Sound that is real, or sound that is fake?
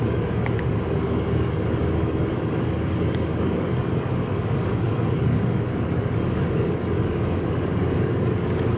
fake